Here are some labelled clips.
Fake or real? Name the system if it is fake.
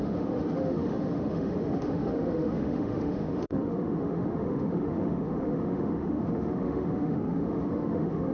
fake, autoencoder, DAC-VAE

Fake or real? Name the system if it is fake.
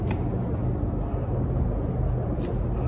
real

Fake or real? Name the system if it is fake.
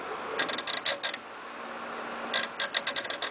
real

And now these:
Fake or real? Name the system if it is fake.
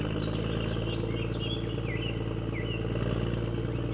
real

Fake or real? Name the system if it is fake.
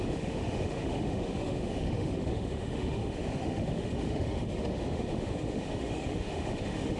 fake, autoencoder, DAC-VAE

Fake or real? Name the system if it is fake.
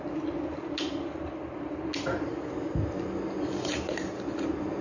real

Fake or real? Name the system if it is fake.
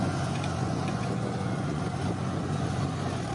fake, vocoder, Vocos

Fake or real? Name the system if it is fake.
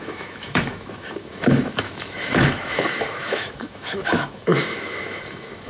fake, autoencoder, DAC-VAE